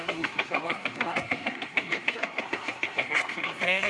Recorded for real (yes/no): no